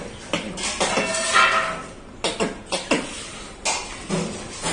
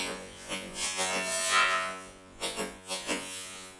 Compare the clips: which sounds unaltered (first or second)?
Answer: first